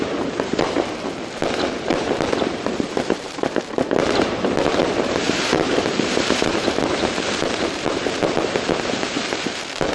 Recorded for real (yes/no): no